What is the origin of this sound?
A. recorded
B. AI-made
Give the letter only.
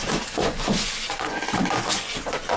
B